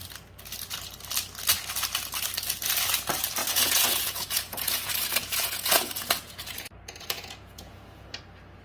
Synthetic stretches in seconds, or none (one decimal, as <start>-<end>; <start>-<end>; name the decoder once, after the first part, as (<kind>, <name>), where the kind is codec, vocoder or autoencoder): 3.4-8.2 (vocoder, Vocos)